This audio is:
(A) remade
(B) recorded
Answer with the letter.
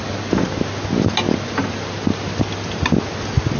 B